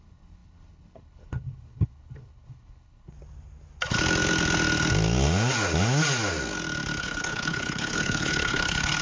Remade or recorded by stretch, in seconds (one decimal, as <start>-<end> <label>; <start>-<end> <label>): 0.0-3.1 remade; 3.1-7.0 recorded; 7.0-9.0 remade